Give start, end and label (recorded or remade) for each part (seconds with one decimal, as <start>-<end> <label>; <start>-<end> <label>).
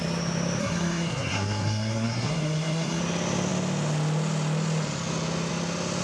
0.0-0.6 recorded; 0.6-3.0 remade; 3.0-6.0 recorded